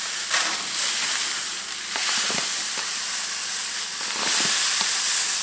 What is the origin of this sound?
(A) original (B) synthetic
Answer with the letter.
B